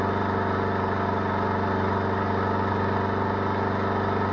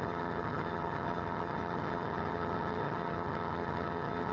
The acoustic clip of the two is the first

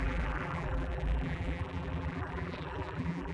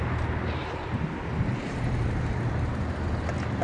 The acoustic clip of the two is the second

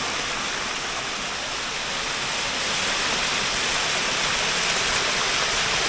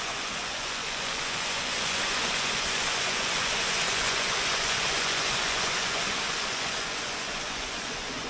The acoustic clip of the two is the first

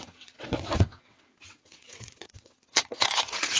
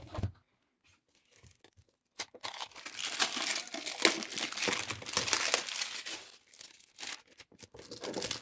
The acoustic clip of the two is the second